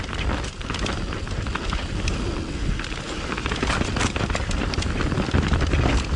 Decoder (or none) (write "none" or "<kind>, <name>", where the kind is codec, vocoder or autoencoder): none